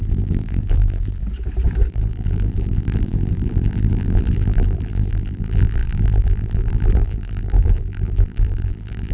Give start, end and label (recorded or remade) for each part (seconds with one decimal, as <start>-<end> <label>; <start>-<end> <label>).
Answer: 0.0-1.2 remade; 1.2-1.9 recorded; 1.9-9.1 remade